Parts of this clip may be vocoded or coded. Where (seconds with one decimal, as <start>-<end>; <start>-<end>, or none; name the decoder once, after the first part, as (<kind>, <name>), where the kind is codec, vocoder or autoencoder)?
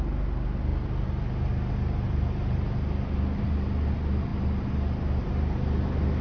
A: none